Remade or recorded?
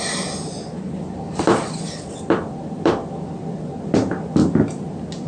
recorded